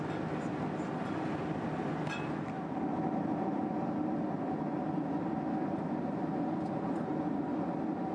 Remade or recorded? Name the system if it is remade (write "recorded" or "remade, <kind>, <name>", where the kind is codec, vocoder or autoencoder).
recorded